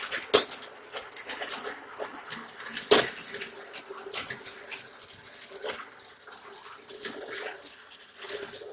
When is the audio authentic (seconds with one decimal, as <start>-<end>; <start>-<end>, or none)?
0.0-8.7